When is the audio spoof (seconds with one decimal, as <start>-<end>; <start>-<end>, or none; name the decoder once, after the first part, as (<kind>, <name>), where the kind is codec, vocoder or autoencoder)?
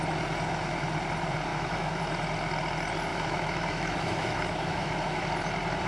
1.5-2.0 (autoencoder, DAC-VAE); 3.1-5.2